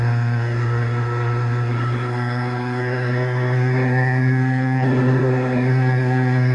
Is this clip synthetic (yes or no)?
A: yes